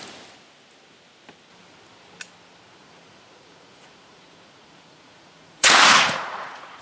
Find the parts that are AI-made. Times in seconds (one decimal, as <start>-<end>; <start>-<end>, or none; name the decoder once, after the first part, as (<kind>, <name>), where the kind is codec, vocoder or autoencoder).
2.7-6.8 (vocoder, Vocos)